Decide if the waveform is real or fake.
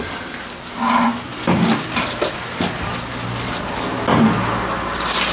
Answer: real